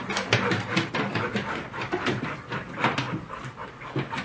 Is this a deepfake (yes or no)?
no